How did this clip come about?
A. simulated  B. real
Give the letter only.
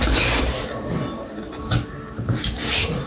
A